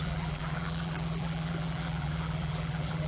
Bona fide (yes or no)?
no